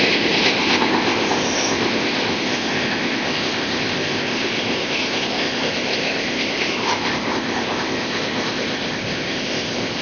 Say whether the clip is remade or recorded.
remade